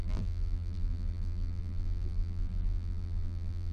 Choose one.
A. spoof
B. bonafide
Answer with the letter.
A